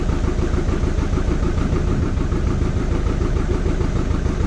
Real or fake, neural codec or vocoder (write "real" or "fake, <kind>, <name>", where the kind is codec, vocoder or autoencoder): real